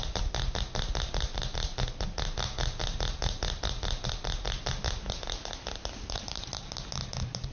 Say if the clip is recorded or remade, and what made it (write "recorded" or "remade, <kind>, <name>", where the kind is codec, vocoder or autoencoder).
recorded